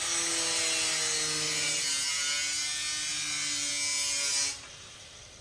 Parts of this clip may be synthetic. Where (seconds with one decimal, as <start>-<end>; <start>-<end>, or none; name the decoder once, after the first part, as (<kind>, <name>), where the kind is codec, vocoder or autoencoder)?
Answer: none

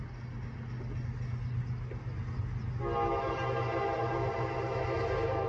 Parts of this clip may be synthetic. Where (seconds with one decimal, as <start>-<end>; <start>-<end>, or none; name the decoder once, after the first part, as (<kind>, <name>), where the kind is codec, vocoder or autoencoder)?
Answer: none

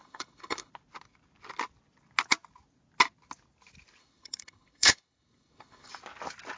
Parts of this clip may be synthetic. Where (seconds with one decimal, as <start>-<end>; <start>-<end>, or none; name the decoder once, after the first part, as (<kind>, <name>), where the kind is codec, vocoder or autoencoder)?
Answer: 0.0-0.7 (codec, HILCodec); 4.0-5.9